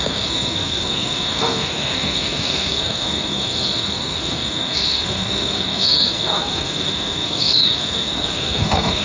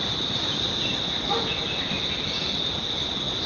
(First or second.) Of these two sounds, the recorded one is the second